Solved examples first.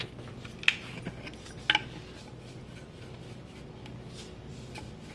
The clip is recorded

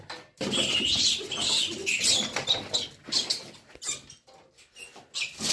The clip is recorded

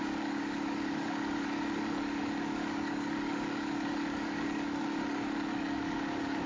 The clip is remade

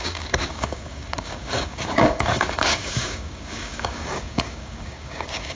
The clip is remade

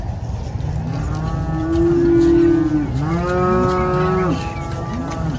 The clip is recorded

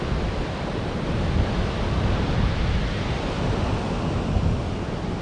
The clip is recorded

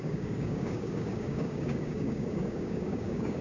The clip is remade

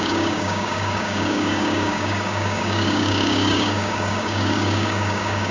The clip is remade